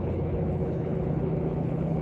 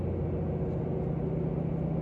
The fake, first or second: first